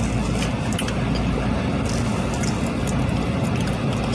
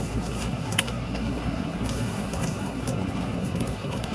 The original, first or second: first